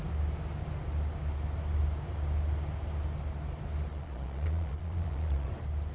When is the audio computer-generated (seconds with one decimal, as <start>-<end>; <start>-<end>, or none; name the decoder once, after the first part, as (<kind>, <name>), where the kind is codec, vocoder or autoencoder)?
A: 3.9-5.5 (vocoder, Vocos)